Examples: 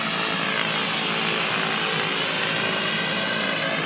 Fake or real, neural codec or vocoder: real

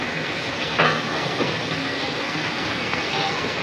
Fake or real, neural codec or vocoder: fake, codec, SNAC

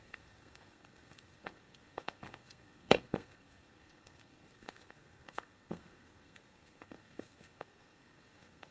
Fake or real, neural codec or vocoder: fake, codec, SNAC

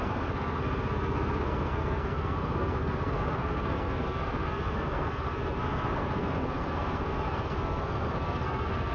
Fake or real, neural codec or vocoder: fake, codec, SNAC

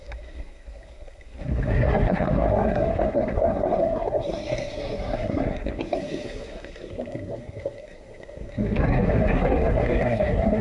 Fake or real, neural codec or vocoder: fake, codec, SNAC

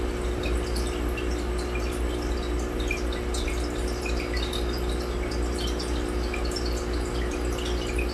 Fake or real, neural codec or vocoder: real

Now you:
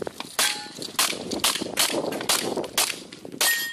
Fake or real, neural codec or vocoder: real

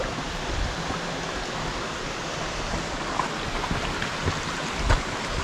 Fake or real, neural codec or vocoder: real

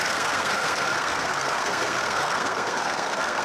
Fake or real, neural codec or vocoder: fake, codec, SNAC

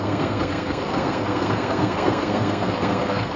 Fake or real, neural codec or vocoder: fake, codec, SNAC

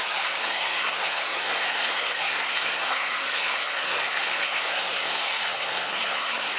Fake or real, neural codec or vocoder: fake, codec, SNAC